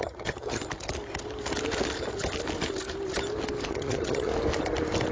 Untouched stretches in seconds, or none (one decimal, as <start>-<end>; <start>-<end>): 0.6-3.7; 4.3-5.1